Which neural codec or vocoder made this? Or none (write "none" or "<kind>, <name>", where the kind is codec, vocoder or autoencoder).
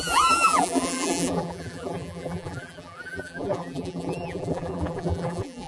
vocoder, BigVGAN v2